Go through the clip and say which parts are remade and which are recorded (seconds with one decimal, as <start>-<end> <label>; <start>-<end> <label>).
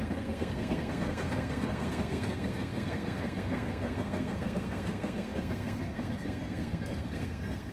0.0-7.7 remade